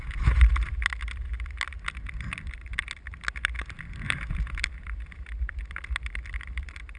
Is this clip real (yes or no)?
yes